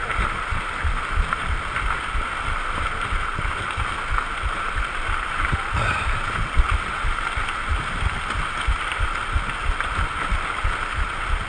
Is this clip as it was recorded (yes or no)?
yes